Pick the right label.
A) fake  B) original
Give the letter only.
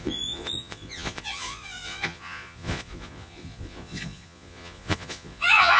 A